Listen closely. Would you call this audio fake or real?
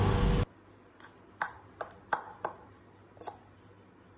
real